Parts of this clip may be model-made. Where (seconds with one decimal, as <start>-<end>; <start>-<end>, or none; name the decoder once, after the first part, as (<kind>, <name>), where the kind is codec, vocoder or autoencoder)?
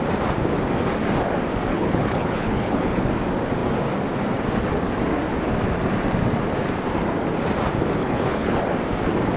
1.7-3.1 (codec, HILCodec); 8.0-8.6